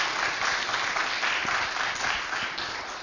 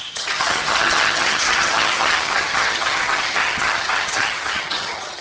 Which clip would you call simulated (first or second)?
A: second